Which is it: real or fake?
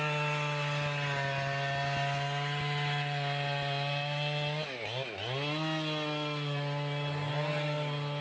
real